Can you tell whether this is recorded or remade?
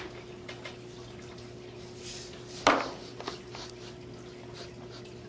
recorded